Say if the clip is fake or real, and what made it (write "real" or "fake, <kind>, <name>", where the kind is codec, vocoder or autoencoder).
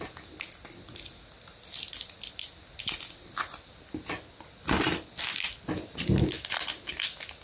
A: real